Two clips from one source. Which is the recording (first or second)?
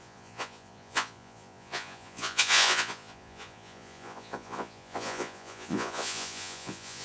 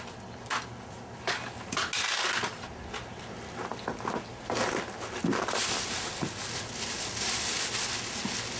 second